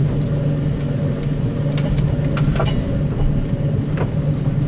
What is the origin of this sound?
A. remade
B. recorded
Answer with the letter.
B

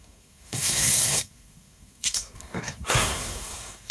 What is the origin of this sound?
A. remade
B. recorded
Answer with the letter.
A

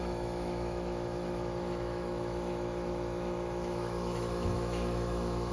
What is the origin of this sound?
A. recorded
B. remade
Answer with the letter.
B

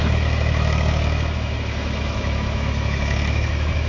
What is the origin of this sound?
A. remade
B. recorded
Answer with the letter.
A